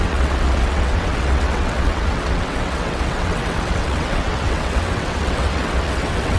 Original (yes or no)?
no